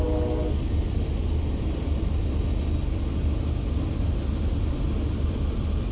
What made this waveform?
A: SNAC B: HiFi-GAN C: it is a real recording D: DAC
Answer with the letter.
C